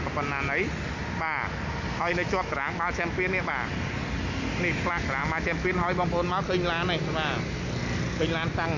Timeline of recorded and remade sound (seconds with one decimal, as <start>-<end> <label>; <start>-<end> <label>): 0.0-2.1 recorded; 2.1-3.5 remade; 3.5-5.2 recorded; 5.2-5.7 remade; 5.7-8.8 recorded